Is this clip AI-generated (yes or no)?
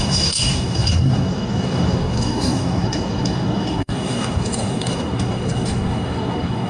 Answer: yes